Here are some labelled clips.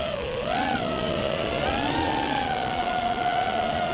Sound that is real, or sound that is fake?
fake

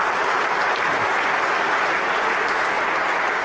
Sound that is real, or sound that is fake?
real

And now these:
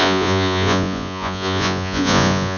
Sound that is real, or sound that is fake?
fake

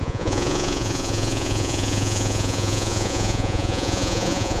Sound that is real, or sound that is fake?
fake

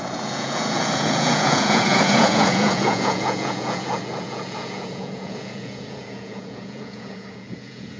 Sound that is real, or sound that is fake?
fake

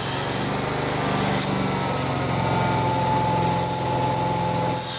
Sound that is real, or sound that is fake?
real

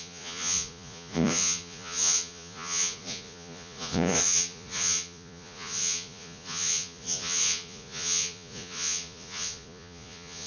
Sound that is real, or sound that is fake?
fake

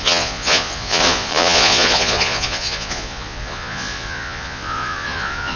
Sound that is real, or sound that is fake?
fake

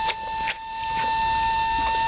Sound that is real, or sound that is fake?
real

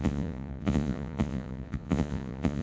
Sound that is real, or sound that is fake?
fake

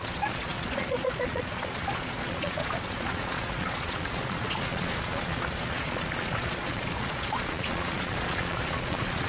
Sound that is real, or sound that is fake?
fake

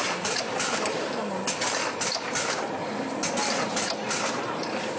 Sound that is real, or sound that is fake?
real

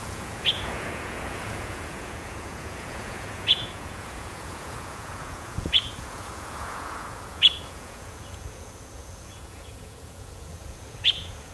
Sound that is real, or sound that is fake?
fake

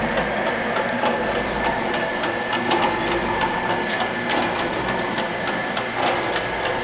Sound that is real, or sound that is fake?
real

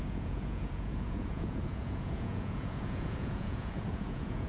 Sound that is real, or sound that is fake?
fake